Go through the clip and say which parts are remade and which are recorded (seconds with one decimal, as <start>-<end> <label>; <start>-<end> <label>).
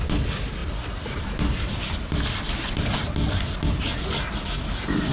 0.0-5.1 recorded